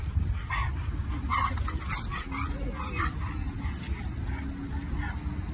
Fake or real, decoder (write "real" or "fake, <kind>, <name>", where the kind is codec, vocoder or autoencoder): real